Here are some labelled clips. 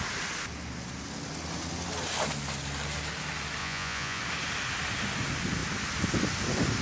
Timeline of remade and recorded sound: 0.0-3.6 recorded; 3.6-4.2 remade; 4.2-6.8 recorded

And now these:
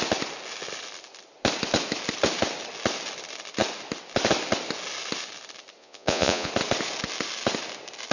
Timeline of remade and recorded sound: 0.0-5.8 recorded; 5.8-6.5 remade; 6.5-8.1 recorded

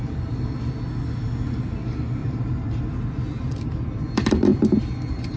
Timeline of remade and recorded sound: 0.0-2.2 recorded; 2.2-2.8 remade; 2.8-4.5 recorded; 4.5-5.4 remade

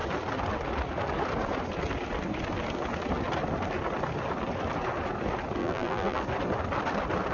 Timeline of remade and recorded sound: 0.0-5.6 recorded; 5.6-6.2 remade; 6.2-7.3 recorded

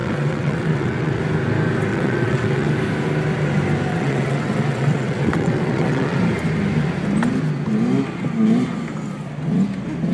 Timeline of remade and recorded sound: 0.0-1.2 remade; 1.2-1.9 recorded; 1.9-2.7 remade; 2.7-3.9 recorded; 3.9-6.2 remade; 6.2-10.1 recorded

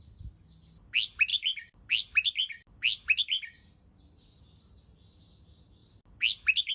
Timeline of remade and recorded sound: 0.0-6.7 recorded

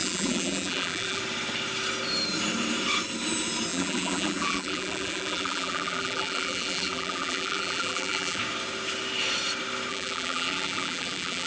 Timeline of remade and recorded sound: 0.0-1.2 remade; 1.2-3.7 recorded; 3.7-8.4 remade; 8.4-9.9 recorded; 9.9-11.5 remade